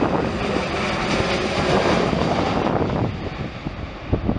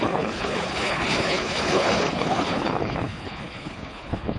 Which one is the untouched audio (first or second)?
first